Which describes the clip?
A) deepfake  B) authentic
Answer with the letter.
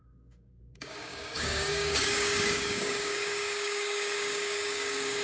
A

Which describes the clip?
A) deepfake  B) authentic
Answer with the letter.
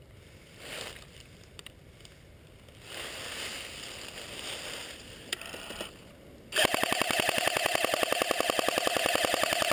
B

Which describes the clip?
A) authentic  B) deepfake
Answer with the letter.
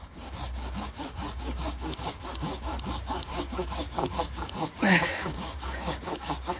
B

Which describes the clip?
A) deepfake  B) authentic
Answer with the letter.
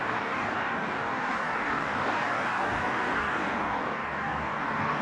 A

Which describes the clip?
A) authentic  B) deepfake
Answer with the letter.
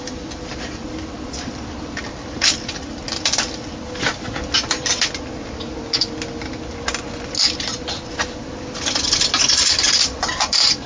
A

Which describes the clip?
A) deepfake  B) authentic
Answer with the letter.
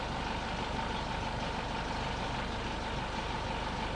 B